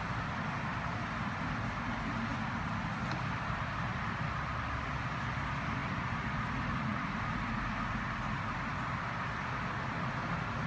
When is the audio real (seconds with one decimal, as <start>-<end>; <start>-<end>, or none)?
0.0-0.7; 1.9-5.8; 6.4-6.9; 7.7-10.7